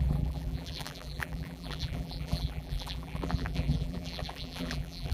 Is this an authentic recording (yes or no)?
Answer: no